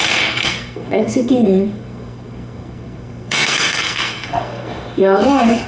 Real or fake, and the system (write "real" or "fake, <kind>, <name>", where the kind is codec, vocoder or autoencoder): fake, codec, SNAC